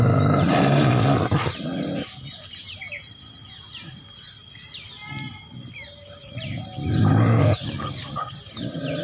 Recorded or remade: recorded